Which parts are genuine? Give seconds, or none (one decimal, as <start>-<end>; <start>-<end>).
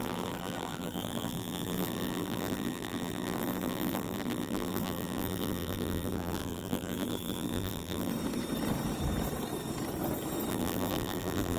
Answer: 8.1-10.5